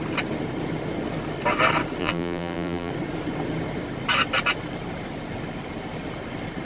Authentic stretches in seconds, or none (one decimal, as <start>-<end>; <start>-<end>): 0.0-2.0; 2.9-6.6